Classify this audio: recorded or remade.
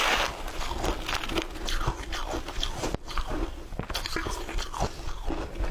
recorded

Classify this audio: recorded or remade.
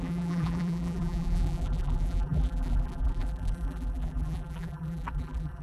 remade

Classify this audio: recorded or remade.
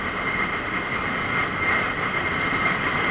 remade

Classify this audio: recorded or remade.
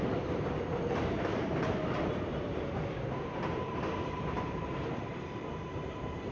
remade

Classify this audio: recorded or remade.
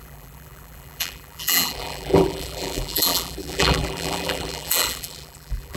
remade